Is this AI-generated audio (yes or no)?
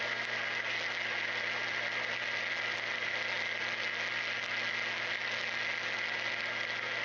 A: no